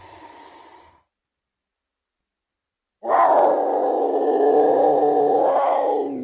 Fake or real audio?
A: real